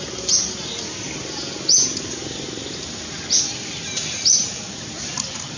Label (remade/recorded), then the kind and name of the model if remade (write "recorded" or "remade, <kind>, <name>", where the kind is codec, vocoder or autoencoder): recorded